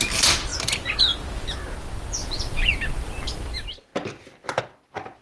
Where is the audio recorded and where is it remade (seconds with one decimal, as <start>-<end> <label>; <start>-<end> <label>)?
0.0-2.2 recorded; 2.2-2.7 remade; 2.7-5.2 recorded